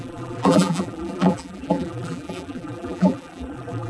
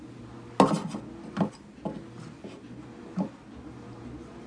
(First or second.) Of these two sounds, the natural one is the second